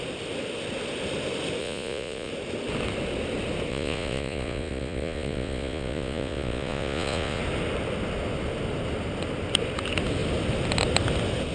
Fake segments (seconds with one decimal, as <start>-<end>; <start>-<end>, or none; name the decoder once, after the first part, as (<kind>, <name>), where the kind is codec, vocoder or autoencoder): 1.6-2.3 (vocoder, Vocos); 3.7-7.4